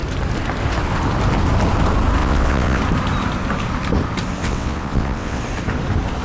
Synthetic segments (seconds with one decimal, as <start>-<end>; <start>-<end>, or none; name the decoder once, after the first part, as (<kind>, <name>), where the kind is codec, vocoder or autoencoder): 2.2-2.8 (vocoder, WaveNeXt); 4.4-5.4